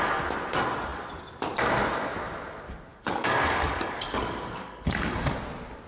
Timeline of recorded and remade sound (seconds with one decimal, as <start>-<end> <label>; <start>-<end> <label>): 0.0-2.9 recorded; 2.9-5.4 remade; 5.4-5.9 recorded